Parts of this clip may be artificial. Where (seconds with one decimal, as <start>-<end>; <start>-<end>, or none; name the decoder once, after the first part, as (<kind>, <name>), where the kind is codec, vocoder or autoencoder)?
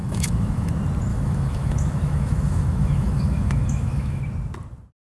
0.0-0.7 (autoencoder, DAC-VAE); 1.1-4.2